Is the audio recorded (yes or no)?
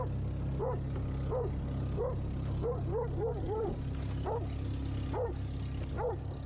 yes